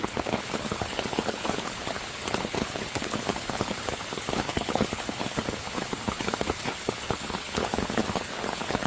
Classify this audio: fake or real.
fake